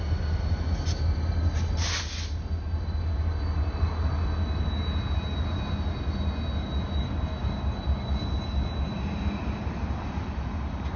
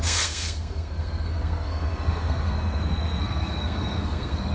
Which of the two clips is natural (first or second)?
first